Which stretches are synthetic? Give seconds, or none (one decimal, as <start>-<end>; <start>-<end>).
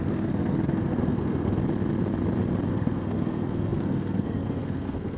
0.0-1.6; 2.7-5.2